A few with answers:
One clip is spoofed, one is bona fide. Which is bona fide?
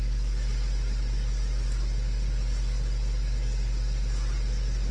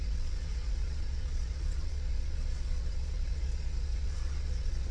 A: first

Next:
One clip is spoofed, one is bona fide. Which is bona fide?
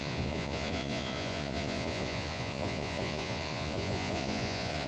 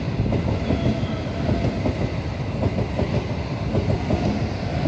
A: second